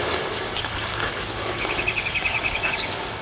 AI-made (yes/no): yes